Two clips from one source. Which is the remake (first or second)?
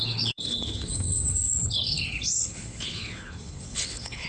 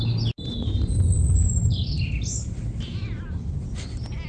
first